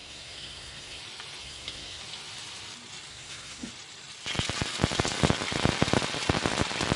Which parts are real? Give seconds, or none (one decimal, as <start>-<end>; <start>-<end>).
1.0-1.4; 2.0-3.1; 3.7-7.0